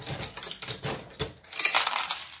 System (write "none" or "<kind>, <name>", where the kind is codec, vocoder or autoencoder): none